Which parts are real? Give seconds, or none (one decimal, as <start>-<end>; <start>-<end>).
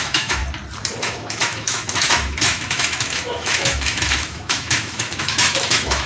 0.4-1.0